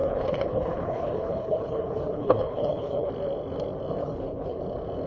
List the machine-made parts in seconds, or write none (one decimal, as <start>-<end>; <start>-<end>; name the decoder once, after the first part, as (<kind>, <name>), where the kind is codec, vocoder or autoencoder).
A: 0.0-3.1 (codec, HILCodec); 4.0-4.6